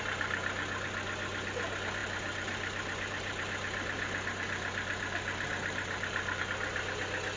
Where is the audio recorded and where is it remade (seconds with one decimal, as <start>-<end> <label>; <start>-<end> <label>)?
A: 0.0-2.0 recorded; 2.0-6.4 remade; 6.4-7.4 recorded